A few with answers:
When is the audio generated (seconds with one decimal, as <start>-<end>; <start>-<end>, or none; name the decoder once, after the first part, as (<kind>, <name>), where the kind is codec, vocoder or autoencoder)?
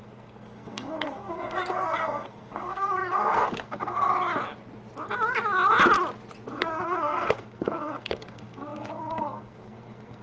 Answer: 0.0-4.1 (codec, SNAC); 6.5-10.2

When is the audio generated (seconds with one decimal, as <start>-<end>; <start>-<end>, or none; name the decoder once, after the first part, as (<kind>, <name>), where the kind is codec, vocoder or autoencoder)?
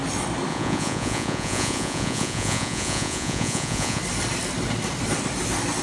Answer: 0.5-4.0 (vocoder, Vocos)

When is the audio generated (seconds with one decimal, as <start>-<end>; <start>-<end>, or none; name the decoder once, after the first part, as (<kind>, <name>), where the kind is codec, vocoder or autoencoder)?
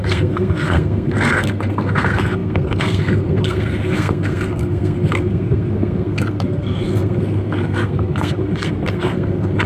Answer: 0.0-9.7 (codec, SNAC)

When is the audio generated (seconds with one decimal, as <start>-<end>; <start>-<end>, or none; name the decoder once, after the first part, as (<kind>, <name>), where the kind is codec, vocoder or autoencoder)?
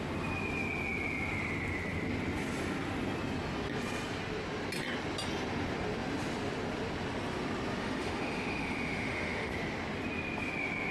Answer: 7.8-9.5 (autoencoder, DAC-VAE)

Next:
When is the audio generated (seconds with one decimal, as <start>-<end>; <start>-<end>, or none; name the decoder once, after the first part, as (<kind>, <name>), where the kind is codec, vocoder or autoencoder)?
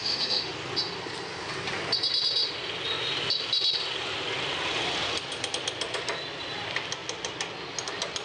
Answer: 0.0-0.5 (autoencoder, DAC-VAE)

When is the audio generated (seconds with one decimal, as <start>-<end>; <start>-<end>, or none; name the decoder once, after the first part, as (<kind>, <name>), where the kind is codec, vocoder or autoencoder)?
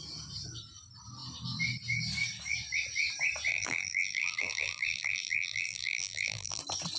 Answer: 3.5-6.6 (vocoder, BigVGAN v2)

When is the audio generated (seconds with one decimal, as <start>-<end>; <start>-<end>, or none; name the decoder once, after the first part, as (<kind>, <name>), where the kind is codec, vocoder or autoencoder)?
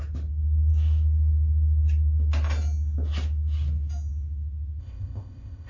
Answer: 4.8-5.7 (codec, ZipCodec)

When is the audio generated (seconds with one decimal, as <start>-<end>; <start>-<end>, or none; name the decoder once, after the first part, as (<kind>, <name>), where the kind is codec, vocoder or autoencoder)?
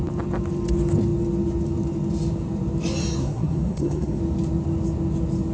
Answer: 3.2-4.2 (codec, SNAC)